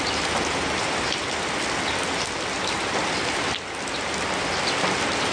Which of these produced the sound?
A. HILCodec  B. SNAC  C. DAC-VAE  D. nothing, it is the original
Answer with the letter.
D